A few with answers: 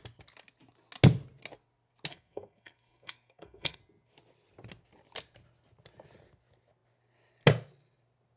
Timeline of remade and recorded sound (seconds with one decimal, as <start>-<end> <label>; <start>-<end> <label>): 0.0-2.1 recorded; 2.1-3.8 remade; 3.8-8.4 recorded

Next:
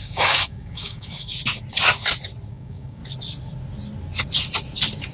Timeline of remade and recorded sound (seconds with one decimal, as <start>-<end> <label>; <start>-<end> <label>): 0.0-1.3 remade; 1.3-2.5 recorded; 2.5-3.0 remade; 3.0-5.1 recorded

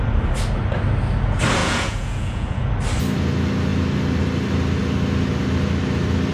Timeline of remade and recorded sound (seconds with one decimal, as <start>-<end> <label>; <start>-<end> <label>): 0.0-1.6 recorded; 1.6-2.7 remade; 2.7-6.3 recorded

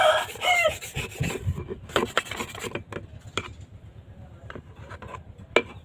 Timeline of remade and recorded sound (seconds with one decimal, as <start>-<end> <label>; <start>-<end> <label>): 0.0-0.9 remade; 0.9-3.3 recorded; 3.3-5.8 remade

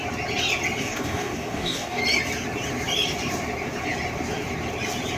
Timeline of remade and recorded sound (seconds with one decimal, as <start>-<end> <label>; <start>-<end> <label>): 0.0-0.8 recorded; 0.8-2.0 remade; 2.0-5.2 recorded